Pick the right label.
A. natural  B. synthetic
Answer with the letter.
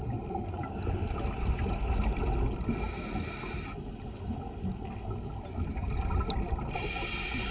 A